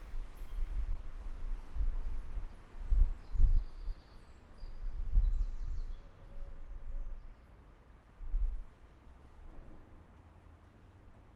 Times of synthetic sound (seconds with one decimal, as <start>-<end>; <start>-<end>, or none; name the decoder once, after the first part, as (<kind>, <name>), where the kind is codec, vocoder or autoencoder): none